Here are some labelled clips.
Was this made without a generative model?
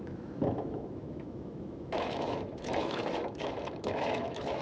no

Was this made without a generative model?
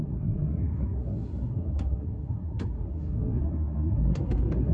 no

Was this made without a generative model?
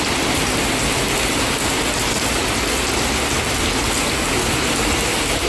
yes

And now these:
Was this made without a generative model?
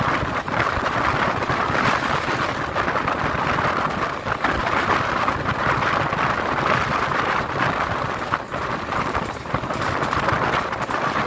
no